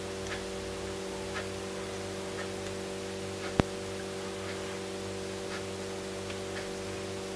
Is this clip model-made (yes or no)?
no